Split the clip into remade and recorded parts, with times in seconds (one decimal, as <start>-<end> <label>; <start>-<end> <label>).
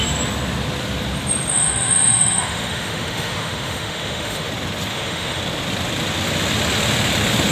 0.0-1.5 recorded; 1.5-4.5 remade; 4.5-4.9 recorded; 4.9-5.4 remade; 5.4-7.5 recorded